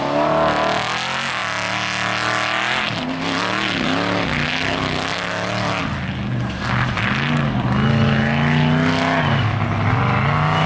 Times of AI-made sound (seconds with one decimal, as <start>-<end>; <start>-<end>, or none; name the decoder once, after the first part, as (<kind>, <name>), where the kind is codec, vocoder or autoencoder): none